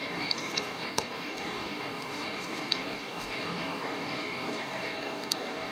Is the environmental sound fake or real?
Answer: fake